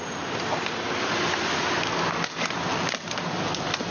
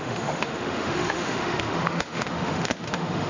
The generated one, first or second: second